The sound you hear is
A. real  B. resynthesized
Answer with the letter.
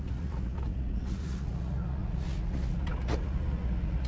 B